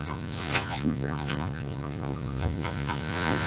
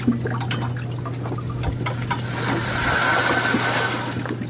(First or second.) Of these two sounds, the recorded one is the second